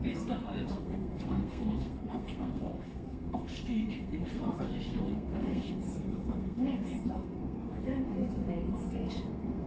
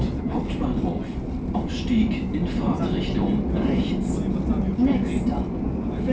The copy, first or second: first